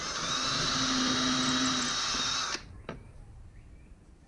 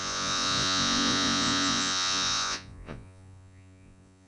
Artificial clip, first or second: second